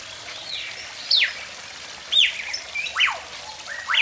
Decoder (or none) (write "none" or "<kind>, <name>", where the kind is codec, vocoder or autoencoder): none